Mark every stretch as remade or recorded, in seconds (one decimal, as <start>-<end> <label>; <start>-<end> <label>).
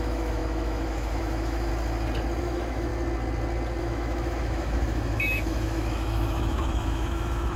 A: 0.0-1.7 remade; 1.7-2.4 recorded; 2.4-2.9 remade; 2.9-3.8 recorded; 3.8-7.6 remade